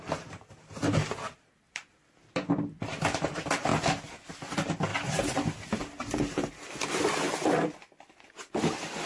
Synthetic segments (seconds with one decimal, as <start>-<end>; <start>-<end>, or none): none

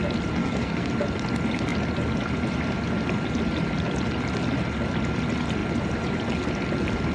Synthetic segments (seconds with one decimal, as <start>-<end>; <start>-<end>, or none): 0.4-0.9